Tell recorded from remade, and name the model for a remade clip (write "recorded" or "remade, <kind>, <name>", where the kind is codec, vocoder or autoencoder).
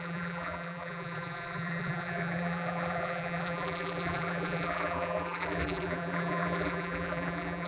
remade, vocoder, BigVGAN v2